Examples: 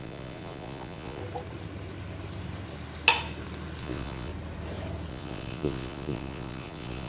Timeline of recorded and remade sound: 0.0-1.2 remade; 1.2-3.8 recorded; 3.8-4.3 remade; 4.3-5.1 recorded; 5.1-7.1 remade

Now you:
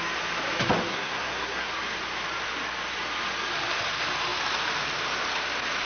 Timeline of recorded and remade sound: 0.0-0.9 recorded; 0.9-1.7 remade; 1.7-5.9 recorded

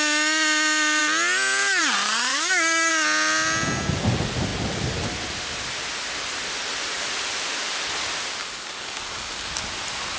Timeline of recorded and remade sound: 0.0-2.3 recorded; 2.3-2.9 remade; 2.9-8.4 recorded; 8.4-9.5 remade; 9.5-10.2 recorded

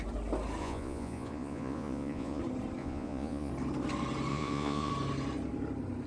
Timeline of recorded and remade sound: 0.0-0.6 recorded; 0.6-2.4 remade; 2.4-2.8 recorded; 2.8-3.5 remade; 3.5-4.3 recorded; 4.3-4.9 remade; 4.9-6.1 recorded

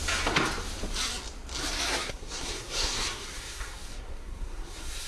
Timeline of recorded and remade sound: 0.0-1.9 recorded; 1.9-5.1 remade

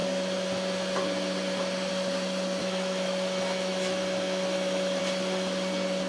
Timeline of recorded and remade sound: 0.0-2.6 recorded; 2.6-5.0 remade; 5.0-6.1 recorded